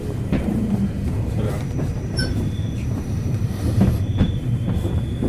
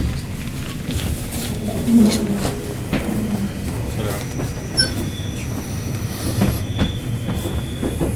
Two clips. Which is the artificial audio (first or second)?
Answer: first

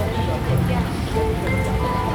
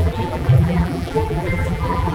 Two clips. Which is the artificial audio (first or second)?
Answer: second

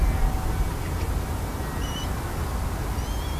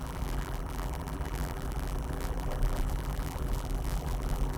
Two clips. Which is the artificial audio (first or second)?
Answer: second